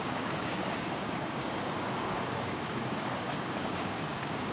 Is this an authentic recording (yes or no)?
no